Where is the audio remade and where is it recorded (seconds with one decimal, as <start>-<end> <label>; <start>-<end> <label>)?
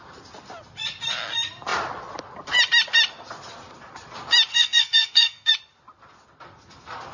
0.0-4.5 recorded; 4.5-5.5 remade; 5.5-7.1 recorded